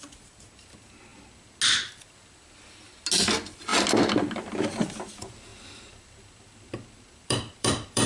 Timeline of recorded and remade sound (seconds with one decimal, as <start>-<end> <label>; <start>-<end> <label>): 0.0-5.5 recorded; 5.5-8.1 remade